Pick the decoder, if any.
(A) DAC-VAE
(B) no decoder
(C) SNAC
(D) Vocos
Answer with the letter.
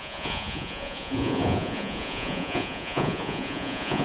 D